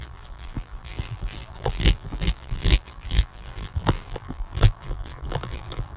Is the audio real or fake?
fake